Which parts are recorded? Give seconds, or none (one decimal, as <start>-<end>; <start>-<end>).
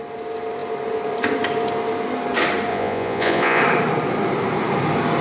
0.0-2.7; 3.6-5.2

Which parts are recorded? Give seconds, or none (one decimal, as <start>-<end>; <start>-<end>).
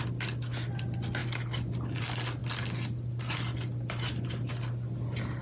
0.0-5.4